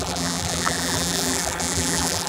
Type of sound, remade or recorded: remade